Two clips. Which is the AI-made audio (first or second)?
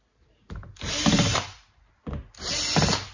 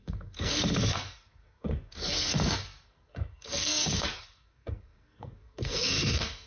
second